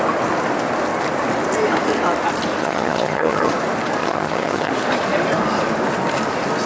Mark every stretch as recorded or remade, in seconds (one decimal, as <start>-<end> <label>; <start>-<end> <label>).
0.0-2.6 recorded; 2.6-3.5 remade; 3.5-4.0 recorded; 4.0-4.7 remade; 4.7-6.7 recorded